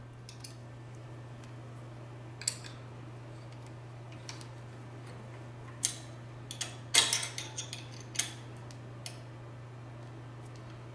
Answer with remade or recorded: recorded